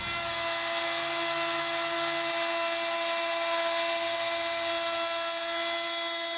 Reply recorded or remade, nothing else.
recorded